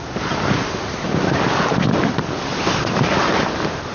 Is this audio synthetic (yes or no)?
no